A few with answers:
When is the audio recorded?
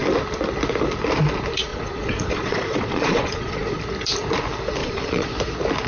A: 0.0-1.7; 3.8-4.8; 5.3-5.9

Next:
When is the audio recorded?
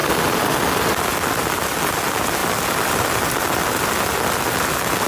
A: 0.0-5.1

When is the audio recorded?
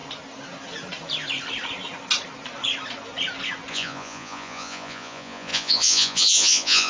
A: 0.0-3.7